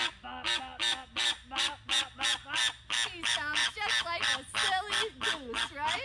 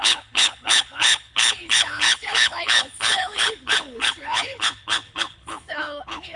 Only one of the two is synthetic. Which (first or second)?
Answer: second